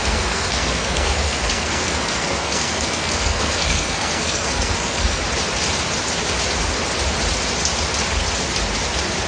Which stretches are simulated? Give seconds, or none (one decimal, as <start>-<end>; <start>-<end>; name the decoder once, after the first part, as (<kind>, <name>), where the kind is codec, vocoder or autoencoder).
0.0-5.2 (codec, SNAC)